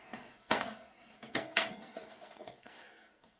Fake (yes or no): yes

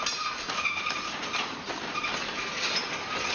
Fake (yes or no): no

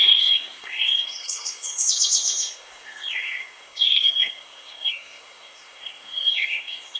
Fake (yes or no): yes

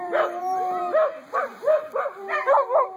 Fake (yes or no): yes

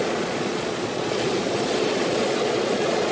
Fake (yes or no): yes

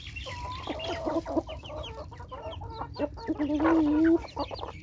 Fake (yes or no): no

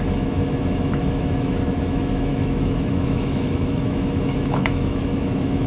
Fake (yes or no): yes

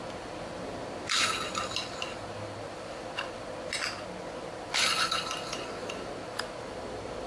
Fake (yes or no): no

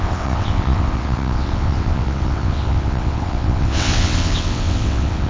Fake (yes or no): yes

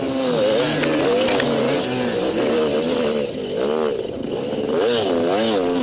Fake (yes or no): no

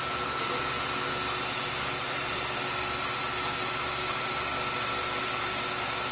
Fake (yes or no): no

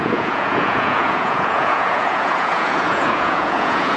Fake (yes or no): yes